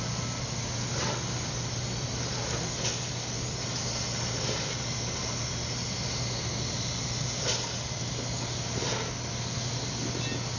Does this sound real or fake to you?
real